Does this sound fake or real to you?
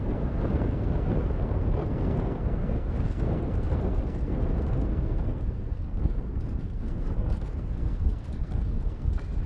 fake